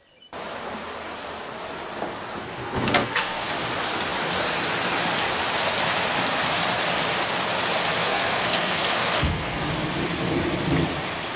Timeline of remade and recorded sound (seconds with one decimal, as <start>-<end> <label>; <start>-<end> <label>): 0.0-2.6 recorded; 2.6-3.5 remade; 3.5-8.0 recorded; 8.0-9.7 remade; 9.7-11.4 recorded